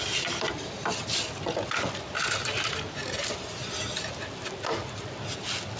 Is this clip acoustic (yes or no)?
yes